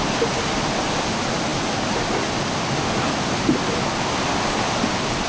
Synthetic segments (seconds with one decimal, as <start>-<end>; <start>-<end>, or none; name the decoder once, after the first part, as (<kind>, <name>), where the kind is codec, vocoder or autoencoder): none